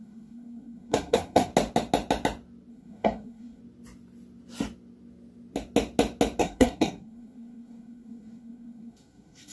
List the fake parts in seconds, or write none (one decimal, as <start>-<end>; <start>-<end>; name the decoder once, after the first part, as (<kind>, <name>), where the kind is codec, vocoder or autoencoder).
0.0-1.5 (codec, SNAC); 2.7-3.6; 6.4-9.5